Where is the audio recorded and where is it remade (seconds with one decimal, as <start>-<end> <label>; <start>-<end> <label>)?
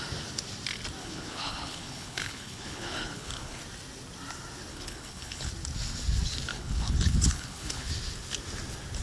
0.0-1.0 recorded; 1.0-3.6 remade; 3.6-4.7 recorded; 4.7-5.5 remade; 5.5-6.5 recorded; 6.5-7.9 remade; 7.9-9.0 recorded